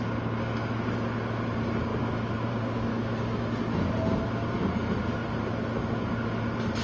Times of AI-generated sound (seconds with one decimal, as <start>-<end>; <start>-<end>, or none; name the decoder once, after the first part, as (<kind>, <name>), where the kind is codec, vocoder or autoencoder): 2.9-3.6 (autoencoder, DAC-VAE)